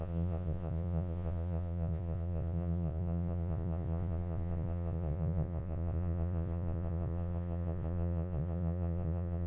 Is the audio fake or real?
fake